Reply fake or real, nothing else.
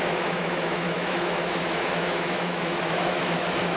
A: fake